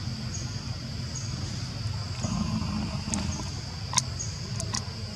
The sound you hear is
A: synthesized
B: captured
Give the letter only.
B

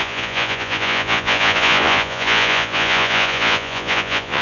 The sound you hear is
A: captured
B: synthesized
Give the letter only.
B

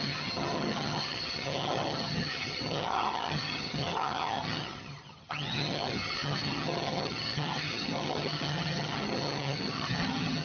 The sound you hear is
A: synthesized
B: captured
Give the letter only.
A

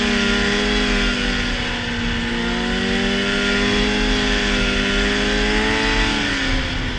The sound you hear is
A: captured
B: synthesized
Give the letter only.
A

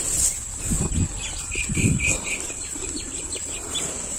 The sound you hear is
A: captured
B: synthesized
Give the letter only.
A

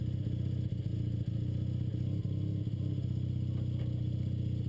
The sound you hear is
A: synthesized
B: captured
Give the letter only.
B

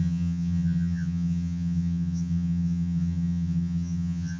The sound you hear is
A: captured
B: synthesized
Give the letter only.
B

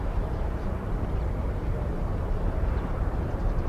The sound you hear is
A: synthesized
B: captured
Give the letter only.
A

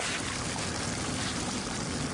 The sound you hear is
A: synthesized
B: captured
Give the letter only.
B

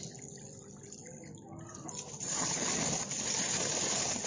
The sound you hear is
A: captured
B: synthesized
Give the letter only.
A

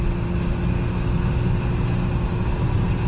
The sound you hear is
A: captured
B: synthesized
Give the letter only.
A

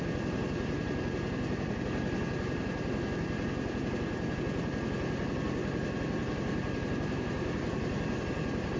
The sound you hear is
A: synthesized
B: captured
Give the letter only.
B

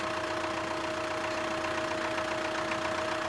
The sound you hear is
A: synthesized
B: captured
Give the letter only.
B